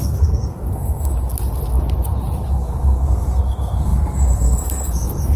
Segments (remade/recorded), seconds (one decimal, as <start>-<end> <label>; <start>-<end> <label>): 0.0-1.1 remade; 1.1-2.5 recorded; 2.5-5.4 remade